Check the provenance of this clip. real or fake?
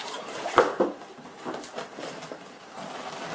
real